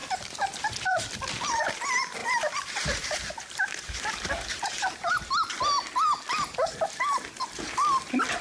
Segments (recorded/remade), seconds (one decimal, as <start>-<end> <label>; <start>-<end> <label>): 0.0-2.2 recorded; 2.2-5.3 remade; 5.3-8.4 recorded